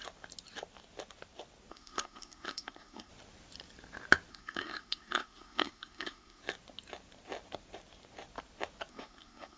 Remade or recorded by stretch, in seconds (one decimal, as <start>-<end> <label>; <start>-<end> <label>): 0.0-1.7 recorded; 1.7-3.1 remade; 3.1-4.3 recorded; 4.3-6.4 remade; 6.4-8.9 recorded; 8.9-9.6 remade